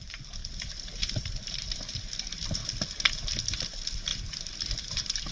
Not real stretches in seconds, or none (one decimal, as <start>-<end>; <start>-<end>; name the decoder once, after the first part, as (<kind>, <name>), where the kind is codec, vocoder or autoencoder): 0.0-2.6 (vocoder, BigVGAN v2); 3.6-5.3